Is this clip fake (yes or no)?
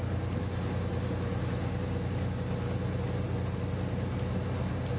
no